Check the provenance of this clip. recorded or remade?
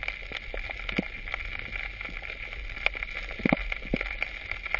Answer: recorded